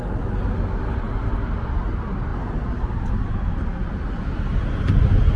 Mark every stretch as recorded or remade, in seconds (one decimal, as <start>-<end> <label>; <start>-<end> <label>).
0.0-5.4 recorded